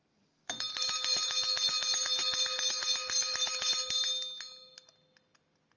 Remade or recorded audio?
recorded